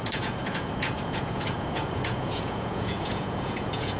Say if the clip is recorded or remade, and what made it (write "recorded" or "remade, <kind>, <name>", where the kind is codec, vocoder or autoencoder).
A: remade, vocoder, Vocos